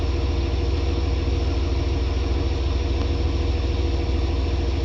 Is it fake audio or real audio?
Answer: real